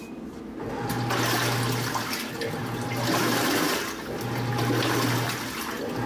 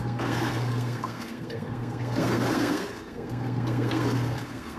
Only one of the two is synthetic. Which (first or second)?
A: second